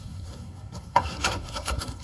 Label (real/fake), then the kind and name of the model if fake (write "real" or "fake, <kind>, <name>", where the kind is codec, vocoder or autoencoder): fake, codec, SNAC